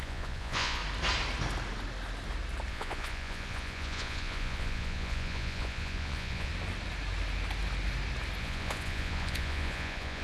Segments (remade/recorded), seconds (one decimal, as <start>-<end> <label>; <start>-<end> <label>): 0.0-0.8 remade; 0.8-2.7 recorded; 2.7-6.5 remade; 6.5-8.4 recorded; 8.4-10.2 remade